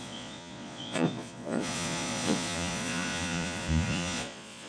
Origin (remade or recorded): remade